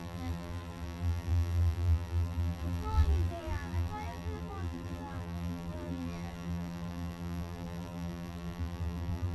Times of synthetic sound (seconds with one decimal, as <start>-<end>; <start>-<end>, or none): 0.0-9.3